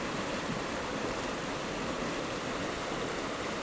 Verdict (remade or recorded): recorded